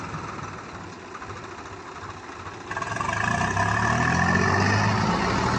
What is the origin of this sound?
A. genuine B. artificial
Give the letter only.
A